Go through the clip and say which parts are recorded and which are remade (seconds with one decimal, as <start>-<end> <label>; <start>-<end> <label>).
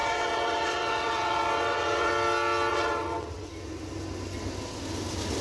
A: 0.0-2.1 remade; 2.1-2.7 recorded; 2.7-3.5 remade; 3.5-5.4 recorded